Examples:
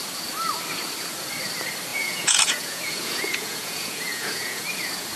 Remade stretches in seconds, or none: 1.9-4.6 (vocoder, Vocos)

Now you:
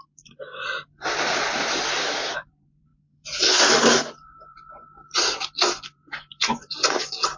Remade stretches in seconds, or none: 0.0-7.4 (vocoder, BigVGAN v2)